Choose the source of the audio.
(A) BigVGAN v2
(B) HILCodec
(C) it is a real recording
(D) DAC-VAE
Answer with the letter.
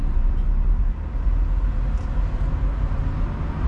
C